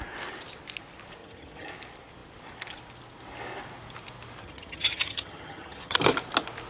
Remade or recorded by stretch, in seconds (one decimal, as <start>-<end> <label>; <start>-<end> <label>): 0.0-1.2 recorded; 1.2-1.7 remade; 1.7-4.4 recorded; 4.4-6.0 remade; 6.0-6.7 recorded